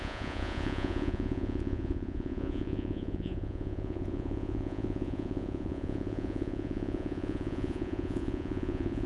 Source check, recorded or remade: remade